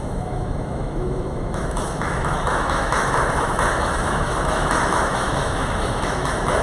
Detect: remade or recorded remade